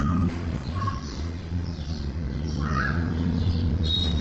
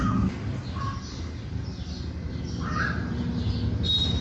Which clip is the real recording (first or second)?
second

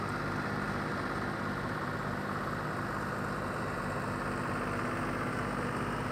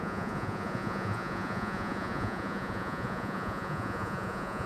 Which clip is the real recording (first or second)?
first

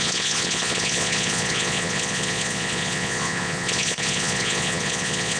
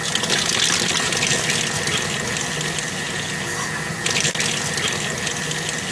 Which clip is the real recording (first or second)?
second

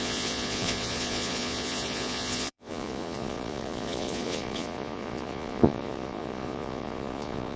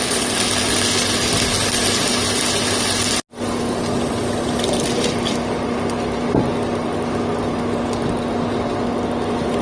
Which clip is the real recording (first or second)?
second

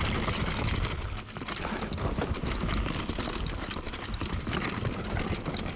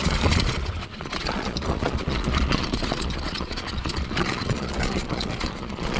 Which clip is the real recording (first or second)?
first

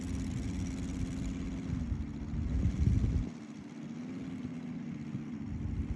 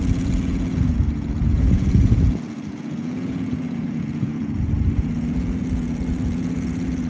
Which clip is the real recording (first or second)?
first